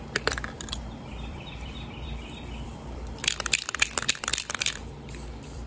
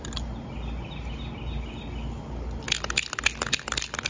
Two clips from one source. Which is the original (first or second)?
second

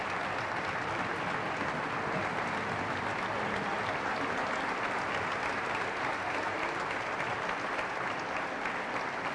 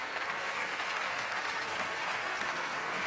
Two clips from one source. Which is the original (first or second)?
first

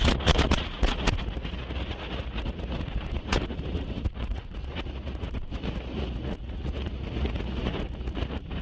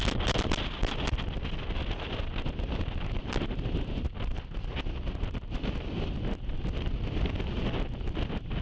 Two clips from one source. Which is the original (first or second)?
second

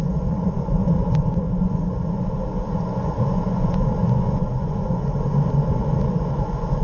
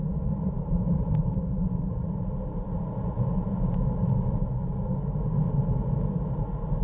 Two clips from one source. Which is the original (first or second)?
second